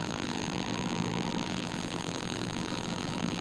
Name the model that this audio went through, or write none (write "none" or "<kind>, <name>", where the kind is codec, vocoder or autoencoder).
vocoder, BigVGAN v2